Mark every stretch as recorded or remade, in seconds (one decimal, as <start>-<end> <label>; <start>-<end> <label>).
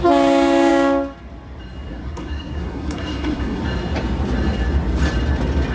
0.0-1.9 recorded; 1.9-3.6 remade; 3.6-5.7 recorded